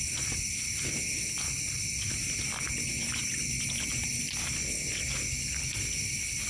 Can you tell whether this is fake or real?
real